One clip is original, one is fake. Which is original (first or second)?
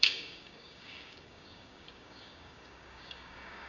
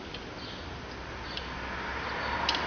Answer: second